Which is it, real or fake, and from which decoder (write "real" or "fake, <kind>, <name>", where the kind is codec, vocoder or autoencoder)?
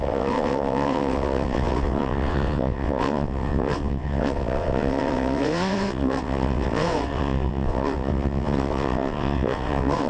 fake, vocoder, WaveNeXt